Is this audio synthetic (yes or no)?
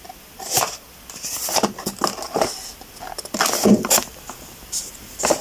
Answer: no